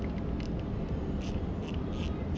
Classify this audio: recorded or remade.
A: recorded